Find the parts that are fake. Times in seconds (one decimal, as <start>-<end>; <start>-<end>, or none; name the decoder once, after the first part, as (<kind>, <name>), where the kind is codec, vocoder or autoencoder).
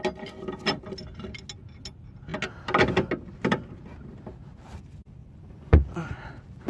5.2-6.2 (vocoder, Vocos)